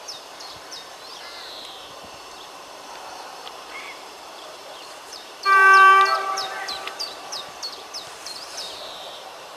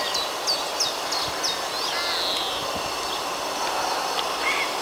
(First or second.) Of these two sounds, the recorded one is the second